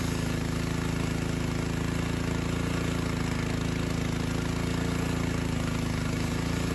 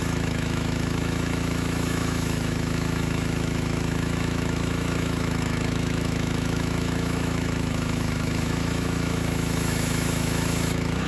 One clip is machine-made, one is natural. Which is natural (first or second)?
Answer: first